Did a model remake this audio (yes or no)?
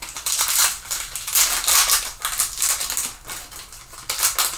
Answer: no